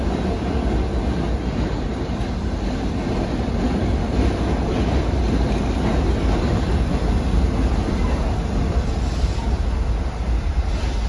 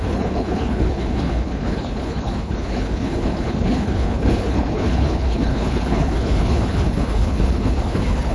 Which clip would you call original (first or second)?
first